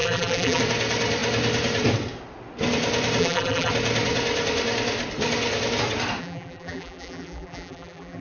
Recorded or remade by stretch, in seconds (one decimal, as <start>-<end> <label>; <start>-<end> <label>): 0.0-0.6 remade; 0.6-3.2 recorded; 3.2-3.7 remade; 3.7-6.2 recorded; 6.2-8.2 remade